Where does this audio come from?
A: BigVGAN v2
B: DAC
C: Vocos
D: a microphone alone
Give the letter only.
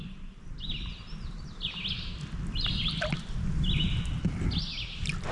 D